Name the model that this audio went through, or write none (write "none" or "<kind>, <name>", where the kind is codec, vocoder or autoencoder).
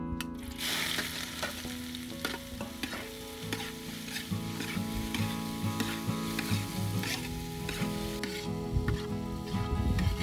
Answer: none